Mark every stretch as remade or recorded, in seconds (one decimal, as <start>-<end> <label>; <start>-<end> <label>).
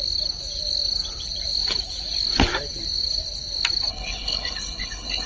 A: 0.0-3.9 recorded; 3.9-5.3 remade